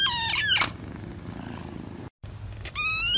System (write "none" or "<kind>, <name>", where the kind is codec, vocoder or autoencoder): none